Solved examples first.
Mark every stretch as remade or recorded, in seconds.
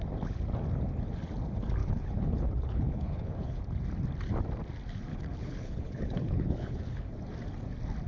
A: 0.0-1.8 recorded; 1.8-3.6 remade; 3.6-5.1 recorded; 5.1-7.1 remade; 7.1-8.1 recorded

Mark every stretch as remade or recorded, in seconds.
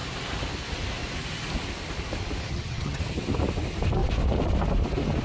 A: 0.0-2.5 recorded; 2.5-3.0 remade; 3.0-5.2 recorded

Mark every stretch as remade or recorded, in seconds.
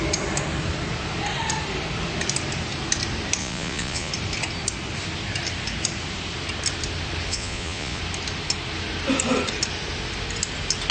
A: 0.0-3.4 recorded; 3.4-4.1 remade; 4.1-7.3 recorded; 7.3-8.0 remade; 8.0-10.9 recorded